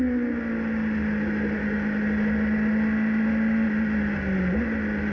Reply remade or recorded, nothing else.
recorded